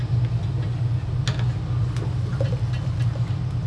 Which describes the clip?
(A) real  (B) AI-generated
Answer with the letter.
A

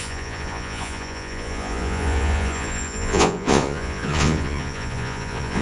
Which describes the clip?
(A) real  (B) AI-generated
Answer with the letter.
B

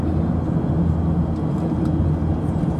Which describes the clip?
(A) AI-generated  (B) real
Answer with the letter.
B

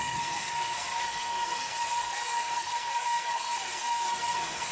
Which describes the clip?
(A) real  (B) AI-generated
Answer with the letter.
B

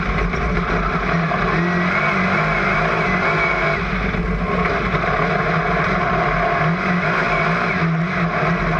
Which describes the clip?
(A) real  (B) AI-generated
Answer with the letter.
A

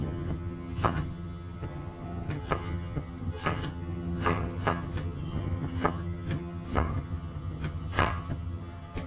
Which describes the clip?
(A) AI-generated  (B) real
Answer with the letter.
A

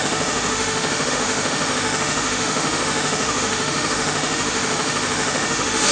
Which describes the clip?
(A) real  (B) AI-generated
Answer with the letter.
B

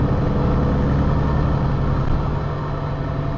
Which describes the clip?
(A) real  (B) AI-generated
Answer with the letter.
A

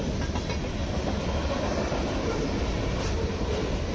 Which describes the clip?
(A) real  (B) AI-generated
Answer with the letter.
A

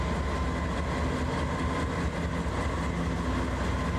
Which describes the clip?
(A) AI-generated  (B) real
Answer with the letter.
B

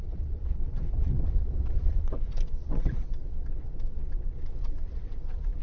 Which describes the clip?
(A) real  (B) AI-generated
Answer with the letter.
B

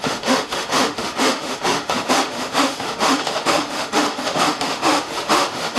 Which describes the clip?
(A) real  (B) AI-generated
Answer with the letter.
B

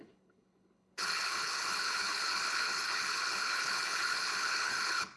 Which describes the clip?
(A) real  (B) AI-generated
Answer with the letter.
B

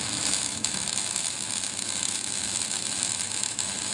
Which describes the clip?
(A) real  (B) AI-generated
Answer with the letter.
B